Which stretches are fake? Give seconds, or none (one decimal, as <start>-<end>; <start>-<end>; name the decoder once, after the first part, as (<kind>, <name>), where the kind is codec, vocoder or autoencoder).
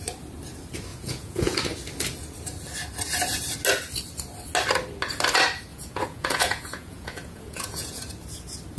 0.9-1.6 (vocoder, Vocos); 5.7-8.0